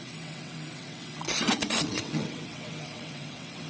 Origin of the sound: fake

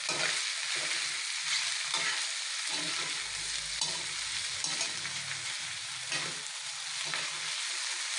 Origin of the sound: real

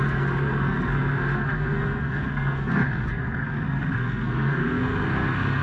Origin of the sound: fake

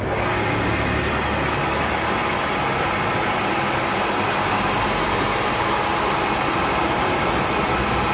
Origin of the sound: real